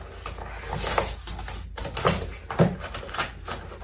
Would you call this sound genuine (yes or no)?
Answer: yes